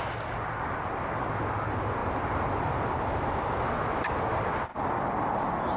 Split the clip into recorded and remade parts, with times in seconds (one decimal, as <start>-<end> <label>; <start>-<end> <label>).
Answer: 0.0-5.8 recorded